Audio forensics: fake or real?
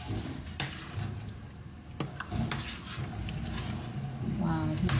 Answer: real